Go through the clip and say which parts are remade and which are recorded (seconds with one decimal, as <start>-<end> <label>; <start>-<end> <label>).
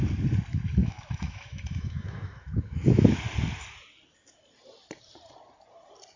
0.0-0.8 recorded; 0.8-3.2 remade; 3.2-6.2 recorded